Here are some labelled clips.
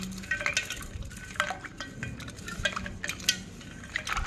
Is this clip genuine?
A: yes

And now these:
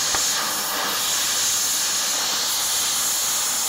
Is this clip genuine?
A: yes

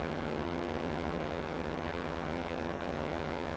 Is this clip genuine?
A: no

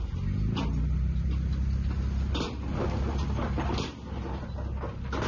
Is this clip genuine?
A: yes